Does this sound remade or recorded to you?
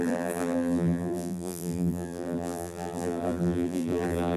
remade